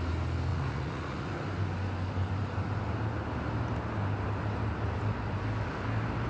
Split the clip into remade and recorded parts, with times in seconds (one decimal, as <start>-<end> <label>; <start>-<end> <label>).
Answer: 0.0-0.5 recorded; 0.5-1.3 remade; 1.3-6.3 recorded